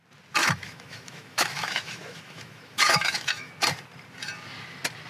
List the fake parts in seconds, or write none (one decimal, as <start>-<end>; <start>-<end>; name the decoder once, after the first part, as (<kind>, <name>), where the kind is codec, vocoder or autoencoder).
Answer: 0.4-3.5 (autoencoder, DAC-VAE)

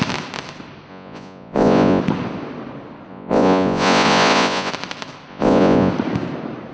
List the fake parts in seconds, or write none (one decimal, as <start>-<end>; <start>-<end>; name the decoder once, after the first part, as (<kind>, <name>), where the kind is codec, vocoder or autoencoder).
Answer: 0.9-2.0 (vocoder, Vocos); 3.1-4.7; 5.3-5.9

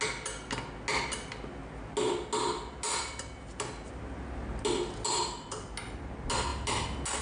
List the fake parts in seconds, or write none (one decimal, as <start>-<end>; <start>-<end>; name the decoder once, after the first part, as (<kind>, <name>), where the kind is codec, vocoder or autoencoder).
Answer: none

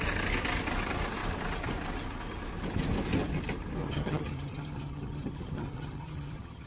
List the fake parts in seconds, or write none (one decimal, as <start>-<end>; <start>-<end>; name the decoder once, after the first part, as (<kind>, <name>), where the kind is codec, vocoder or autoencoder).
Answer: 3.8-6.7 (vocoder, HiFi-GAN)

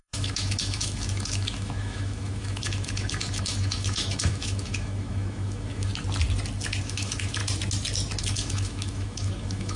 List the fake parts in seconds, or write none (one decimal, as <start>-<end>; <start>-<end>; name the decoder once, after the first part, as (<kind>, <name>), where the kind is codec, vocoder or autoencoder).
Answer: 0.0-5.9 (autoencoder, DAC-VAE); 6.8-7.4; 8.2-9.8

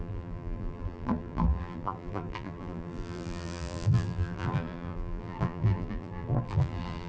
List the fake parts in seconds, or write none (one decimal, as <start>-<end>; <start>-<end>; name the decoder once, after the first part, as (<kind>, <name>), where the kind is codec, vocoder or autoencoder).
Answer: 0.0-7.1 (vocoder, BigVGAN v2)